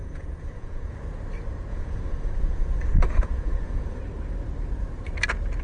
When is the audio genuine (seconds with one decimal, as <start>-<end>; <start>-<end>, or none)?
0.9-1.7; 4.0-5.6